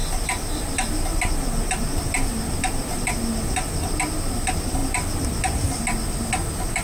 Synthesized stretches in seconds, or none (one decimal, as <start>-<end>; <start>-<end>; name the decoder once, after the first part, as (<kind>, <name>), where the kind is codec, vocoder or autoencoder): none